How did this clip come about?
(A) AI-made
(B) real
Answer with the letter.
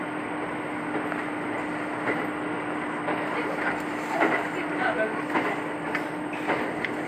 B